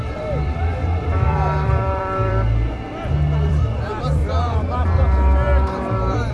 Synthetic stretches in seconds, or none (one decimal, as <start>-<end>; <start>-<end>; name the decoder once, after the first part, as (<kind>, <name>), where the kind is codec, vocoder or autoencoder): 0.0-4.2 (vocoder, BigVGAN v2)